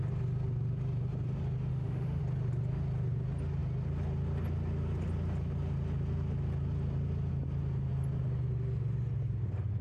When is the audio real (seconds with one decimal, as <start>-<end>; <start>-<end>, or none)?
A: 0.0-1.7; 2.2-9.8